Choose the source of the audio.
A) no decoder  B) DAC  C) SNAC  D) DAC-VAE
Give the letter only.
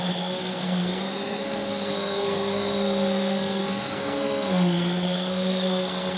C